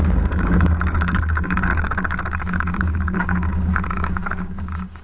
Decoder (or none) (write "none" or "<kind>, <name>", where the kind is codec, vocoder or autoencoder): codec, DAC